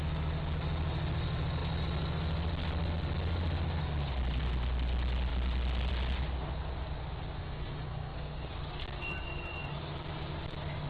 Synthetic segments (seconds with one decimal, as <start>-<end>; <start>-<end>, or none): 7.4-8.5